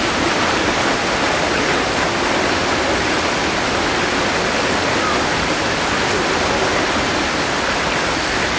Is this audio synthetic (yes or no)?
no